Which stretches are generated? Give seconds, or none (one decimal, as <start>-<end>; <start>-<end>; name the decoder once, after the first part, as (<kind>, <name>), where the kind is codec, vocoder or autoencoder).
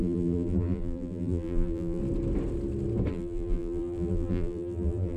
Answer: 0.0-2.0 (vocoder, BigVGAN v2); 3.1-5.2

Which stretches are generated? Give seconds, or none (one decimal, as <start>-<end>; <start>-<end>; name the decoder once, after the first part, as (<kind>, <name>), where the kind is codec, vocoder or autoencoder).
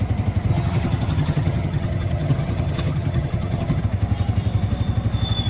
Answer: 0.5-3.8 (vocoder, HiFi-GAN)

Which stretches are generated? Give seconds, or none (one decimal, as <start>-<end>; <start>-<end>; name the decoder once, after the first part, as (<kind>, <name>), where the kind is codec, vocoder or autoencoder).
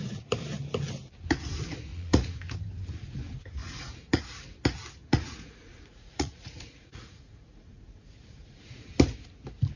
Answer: 1.9-2.4 (vocoder, Vocos); 3.6-4.2; 5.0-8.9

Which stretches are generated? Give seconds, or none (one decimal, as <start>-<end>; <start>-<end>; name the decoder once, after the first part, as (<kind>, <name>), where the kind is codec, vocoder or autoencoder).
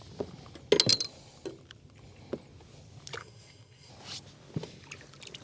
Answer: 3.2-3.9 (codec, SNAC)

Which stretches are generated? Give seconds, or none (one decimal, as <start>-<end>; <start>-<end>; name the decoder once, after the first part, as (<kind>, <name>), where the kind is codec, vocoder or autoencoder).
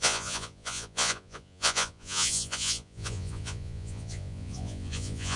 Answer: 0.0-5.4 (vocoder, Vocos)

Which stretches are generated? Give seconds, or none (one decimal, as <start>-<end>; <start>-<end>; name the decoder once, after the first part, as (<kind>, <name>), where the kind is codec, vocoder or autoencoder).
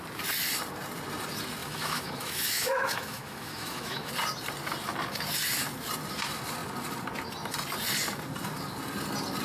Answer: 1.6-4.1 (autoencoder, DAC-VAE)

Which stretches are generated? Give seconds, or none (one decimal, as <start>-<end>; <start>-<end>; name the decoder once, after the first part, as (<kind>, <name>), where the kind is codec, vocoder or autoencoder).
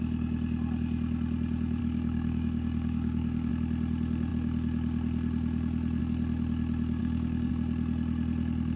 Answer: 1.8-3.5 (codec, DAC); 7.0-7.5